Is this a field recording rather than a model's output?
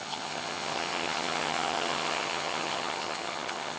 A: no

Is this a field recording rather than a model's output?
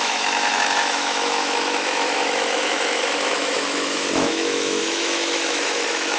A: no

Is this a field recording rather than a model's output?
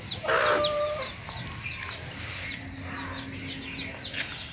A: yes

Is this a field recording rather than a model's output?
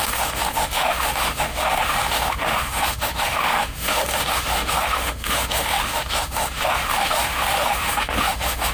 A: no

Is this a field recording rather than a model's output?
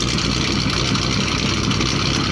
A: yes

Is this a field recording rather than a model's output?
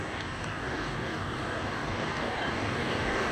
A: no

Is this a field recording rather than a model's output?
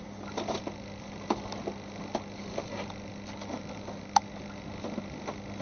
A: yes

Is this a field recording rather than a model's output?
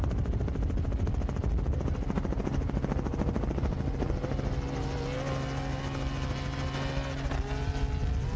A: yes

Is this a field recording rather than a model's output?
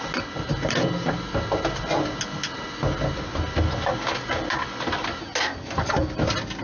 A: yes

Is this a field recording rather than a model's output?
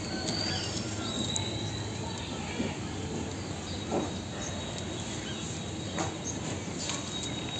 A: yes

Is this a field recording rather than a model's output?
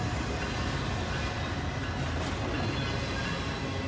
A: yes